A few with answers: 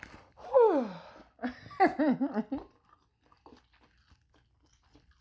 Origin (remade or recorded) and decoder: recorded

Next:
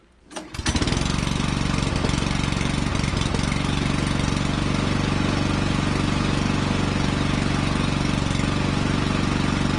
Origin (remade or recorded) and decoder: recorded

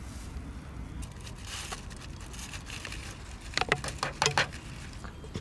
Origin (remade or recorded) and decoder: recorded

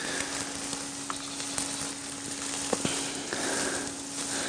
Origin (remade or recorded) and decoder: recorded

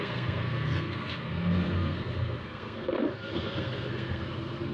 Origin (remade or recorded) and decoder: remade, codec, SNAC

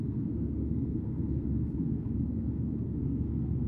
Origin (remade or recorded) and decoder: remade, codec, SNAC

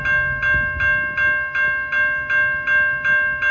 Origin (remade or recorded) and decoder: recorded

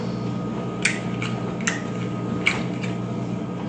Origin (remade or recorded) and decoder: recorded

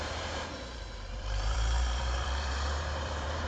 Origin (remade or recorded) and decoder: remade, vocoder, BigVGAN v2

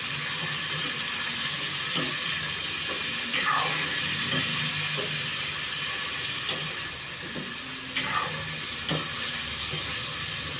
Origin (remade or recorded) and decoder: recorded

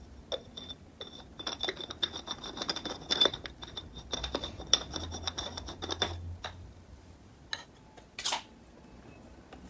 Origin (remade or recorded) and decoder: recorded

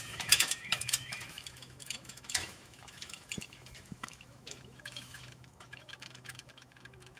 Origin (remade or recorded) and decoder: remade, autoencoder, DAC-VAE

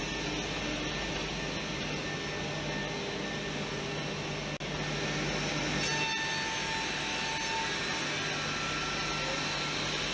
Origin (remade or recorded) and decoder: recorded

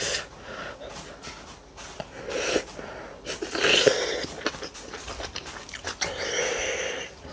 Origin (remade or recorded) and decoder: recorded